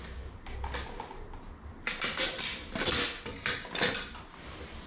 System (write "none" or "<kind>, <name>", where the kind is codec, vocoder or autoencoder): none